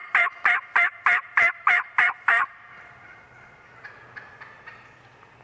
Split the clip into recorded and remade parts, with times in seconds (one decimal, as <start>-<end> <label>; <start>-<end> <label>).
0.0-3.2 remade; 3.2-5.4 recorded